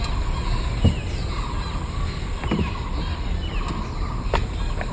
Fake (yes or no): no